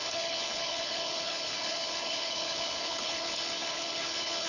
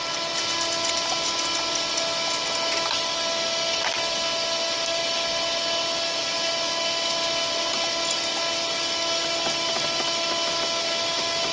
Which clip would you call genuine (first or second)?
second